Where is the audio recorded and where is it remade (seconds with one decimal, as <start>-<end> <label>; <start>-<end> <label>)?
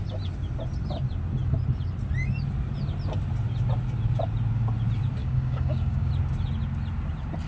0.0-5.2 recorded; 5.2-6.1 remade; 6.1-7.5 recorded